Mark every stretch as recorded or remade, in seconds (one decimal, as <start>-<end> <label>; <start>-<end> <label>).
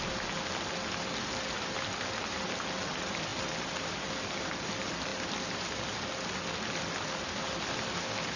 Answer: 0.0-8.4 recorded